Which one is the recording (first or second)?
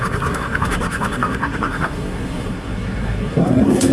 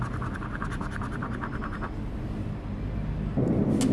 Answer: second